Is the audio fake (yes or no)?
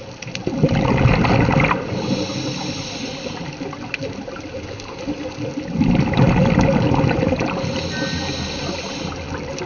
no